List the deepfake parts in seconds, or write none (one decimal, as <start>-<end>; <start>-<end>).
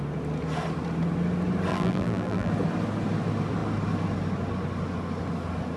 1.7-2.5